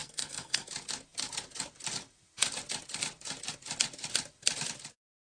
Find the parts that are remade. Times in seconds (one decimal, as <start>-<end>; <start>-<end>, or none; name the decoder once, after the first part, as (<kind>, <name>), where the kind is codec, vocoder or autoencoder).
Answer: 0.0-0.7 (codec, SNAC)